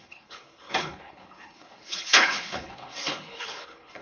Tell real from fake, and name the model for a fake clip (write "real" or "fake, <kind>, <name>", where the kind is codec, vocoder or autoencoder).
fake, codec, HILCodec